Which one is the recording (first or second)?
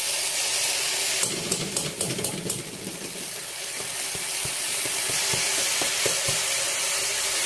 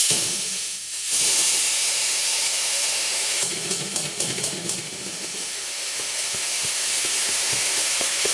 first